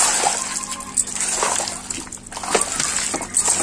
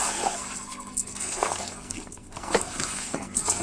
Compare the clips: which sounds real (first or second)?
first